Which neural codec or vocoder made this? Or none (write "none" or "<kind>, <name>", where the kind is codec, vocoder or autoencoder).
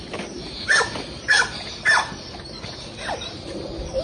none